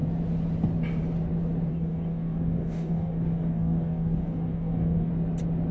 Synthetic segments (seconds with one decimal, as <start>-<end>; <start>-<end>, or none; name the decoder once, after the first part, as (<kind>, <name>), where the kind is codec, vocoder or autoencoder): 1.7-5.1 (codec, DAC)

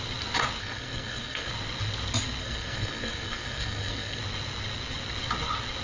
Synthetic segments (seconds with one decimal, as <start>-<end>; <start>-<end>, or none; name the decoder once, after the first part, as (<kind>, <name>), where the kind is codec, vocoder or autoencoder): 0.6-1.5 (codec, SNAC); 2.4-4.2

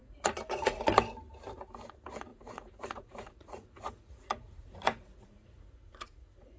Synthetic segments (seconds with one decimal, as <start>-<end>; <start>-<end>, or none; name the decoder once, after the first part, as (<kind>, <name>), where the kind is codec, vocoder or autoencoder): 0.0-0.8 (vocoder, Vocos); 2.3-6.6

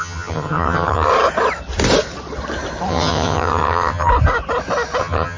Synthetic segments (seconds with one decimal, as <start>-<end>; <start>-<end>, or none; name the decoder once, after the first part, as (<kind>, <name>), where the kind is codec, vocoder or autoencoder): 0.0-1.1 (vocoder, HiFi-GAN); 2.9-4.1; 5.0-5.4